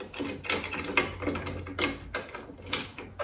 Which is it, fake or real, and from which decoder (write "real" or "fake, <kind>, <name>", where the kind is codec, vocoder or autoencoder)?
real